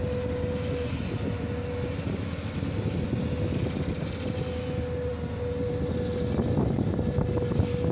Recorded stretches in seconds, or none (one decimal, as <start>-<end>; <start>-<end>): 0.0-7.9